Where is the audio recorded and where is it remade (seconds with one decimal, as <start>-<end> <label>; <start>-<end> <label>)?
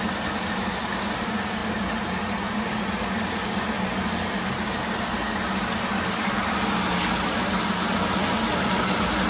0.0-1.6 recorded; 1.6-2.7 remade; 2.7-9.3 recorded